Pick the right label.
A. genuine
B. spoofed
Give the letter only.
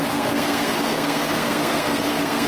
B